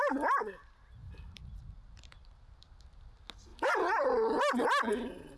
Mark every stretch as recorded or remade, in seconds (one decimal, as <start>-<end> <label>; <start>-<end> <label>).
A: 0.0-1.0 recorded; 1.0-2.6 remade; 2.6-3.5 recorded; 3.5-4.4 remade; 4.4-4.9 recorded; 4.9-5.4 remade